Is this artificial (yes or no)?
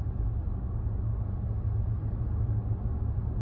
no